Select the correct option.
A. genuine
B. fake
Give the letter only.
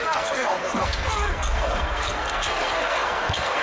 B